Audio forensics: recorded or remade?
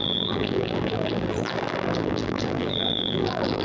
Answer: remade